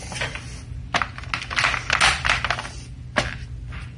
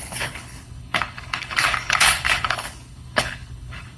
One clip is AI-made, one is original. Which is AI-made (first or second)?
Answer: second